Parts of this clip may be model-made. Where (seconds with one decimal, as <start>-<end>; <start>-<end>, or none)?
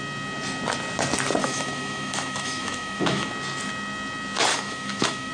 1.4-3.3; 4.5-5.3